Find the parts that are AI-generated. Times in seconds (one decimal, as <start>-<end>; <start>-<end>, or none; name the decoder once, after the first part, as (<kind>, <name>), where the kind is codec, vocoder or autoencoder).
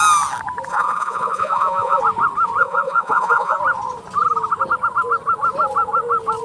0.7-2.0 (vocoder, Vocos); 2.6-3.6